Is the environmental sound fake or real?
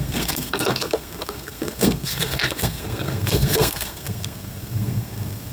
fake